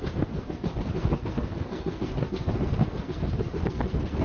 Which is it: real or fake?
fake